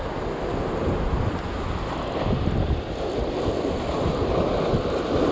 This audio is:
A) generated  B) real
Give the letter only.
B